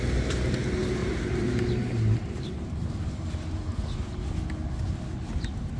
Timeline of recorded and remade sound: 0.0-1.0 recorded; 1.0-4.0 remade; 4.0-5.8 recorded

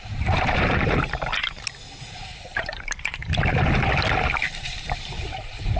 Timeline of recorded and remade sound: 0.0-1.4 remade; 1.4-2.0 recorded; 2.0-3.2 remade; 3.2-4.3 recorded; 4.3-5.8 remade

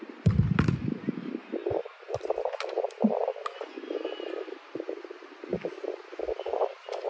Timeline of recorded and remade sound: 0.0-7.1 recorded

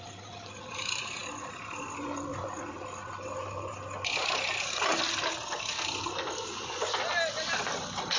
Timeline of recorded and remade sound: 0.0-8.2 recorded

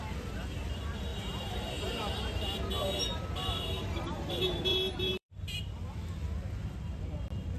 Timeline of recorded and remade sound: 0.0-1.1 recorded; 1.1-2.2 remade; 2.2-4.7 recorded; 4.7-5.5 remade; 5.5-7.6 recorded